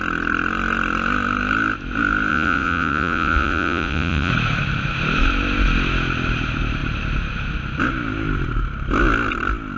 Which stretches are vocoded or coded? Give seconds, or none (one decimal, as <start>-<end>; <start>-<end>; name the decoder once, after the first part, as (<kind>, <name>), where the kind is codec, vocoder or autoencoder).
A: 2.3-4.3 (vocoder, Vocos)